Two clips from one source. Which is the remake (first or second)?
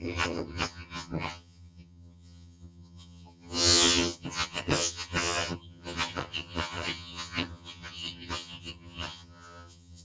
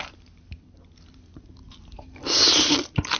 first